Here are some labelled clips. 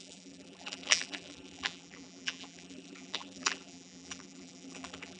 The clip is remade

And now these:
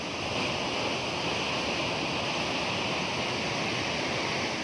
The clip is recorded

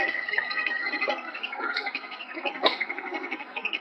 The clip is remade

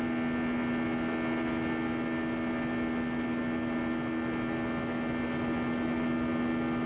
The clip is recorded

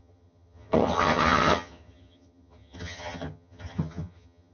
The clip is remade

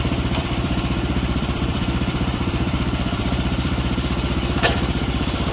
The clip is remade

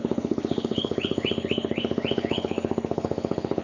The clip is remade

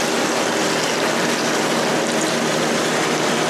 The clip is recorded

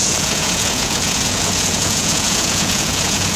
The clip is remade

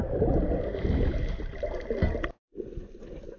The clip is recorded